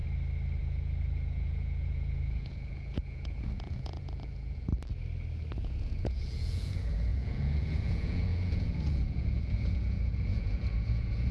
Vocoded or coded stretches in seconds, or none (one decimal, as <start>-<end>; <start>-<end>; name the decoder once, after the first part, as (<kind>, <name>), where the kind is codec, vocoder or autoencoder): 0.6-4.7 (vocoder, Vocos); 5.6-11.3